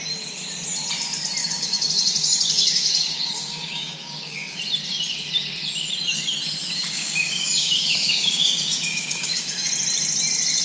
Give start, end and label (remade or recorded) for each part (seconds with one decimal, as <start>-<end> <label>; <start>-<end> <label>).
0.0-1.4 recorded; 1.4-4.6 remade; 4.6-6.8 recorded; 6.8-9.7 remade; 9.7-10.6 recorded